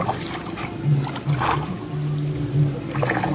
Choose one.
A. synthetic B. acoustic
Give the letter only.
B